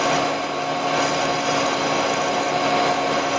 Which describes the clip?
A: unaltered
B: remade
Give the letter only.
A